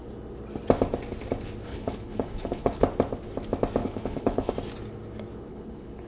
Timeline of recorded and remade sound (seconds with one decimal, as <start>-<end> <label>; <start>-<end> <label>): 0.0-1.7 recorded; 1.7-2.8 remade; 2.8-3.8 recorded; 3.8-4.5 remade; 4.5-5.5 recorded; 5.5-6.1 remade